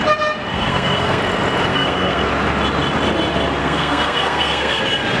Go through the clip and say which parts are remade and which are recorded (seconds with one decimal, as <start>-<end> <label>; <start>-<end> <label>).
0.0-0.5 recorded; 0.5-1.2 remade; 1.2-1.7 recorded; 1.7-2.3 remade; 2.3-3.6 recorded; 3.6-4.8 remade; 4.8-5.2 recorded